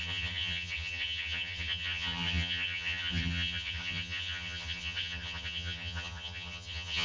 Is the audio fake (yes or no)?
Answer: yes